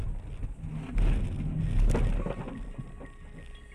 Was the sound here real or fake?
real